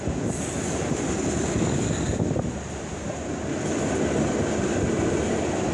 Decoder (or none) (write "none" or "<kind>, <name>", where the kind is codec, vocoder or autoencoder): none